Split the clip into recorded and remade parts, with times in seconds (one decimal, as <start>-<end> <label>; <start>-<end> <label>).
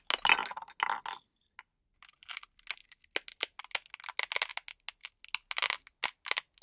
0.0-6.6 recorded